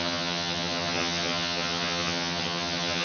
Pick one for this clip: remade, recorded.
remade